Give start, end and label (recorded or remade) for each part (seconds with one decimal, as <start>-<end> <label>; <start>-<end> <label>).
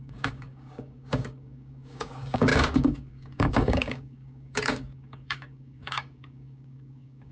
0.0-7.3 remade